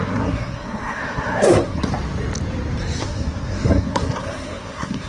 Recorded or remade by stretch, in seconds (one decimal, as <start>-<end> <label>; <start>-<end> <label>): 0.0-1.8 remade; 1.8-3.0 recorded; 3.0-5.1 remade